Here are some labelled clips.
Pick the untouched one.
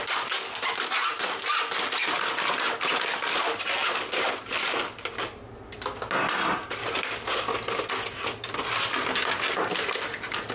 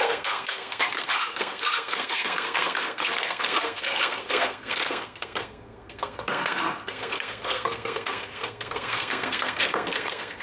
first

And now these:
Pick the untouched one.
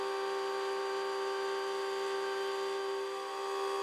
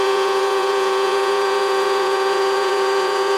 first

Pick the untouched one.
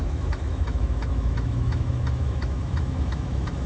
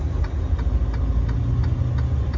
second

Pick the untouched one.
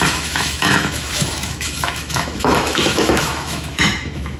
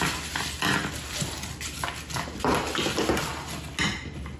second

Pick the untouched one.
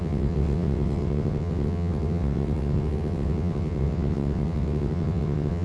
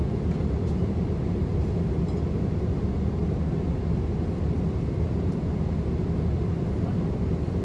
second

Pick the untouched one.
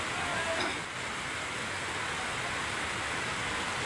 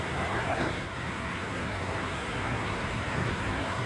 first